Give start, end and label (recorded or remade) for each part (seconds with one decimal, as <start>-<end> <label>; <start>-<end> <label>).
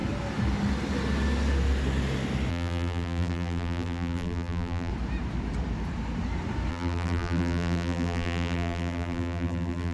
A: 0.0-2.5 recorded; 2.5-4.9 remade; 4.9-6.7 recorded; 6.7-9.9 remade